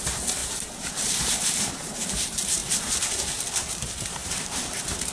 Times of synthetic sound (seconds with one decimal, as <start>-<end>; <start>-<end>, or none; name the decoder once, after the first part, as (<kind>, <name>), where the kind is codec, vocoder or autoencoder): 0.0-2.6 (vocoder, BigVGAN v2); 3.6-5.1